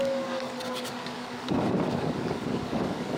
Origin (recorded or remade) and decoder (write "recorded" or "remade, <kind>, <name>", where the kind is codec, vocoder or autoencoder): remade, codec, DAC